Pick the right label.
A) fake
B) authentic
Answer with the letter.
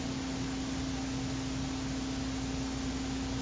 B